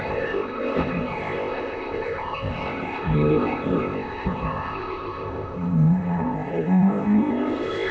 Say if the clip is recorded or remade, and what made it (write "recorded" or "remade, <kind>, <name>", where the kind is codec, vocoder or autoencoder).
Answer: remade, codec, ZipCodec